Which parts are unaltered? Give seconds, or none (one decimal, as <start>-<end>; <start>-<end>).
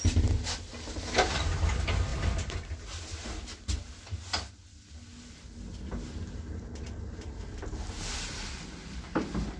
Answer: 0.0-9.6